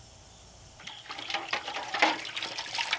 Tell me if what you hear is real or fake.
real